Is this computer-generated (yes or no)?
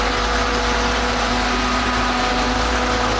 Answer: no